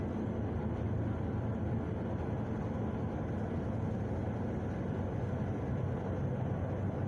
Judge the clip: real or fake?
real